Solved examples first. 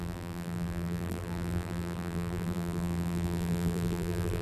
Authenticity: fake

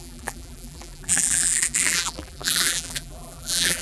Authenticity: fake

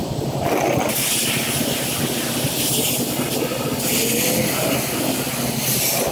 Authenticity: real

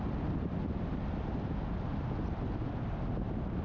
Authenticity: real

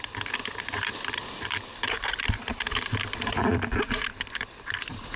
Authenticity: fake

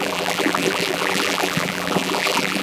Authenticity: fake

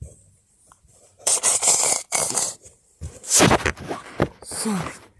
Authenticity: fake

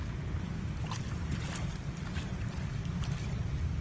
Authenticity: real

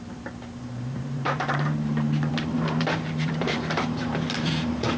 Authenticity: fake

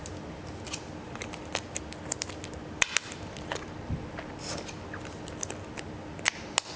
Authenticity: real